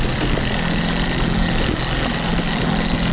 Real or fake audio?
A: real